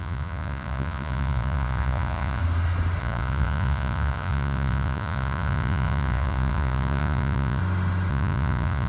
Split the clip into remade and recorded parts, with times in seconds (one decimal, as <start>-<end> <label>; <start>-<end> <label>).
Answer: 0.0-2.4 remade; 2.4-3.0 recorded; 3.0-7.6 remade; 7.6-8.1 recorded; 8.1-8.9 remade